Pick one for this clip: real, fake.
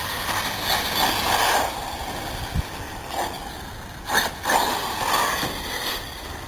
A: real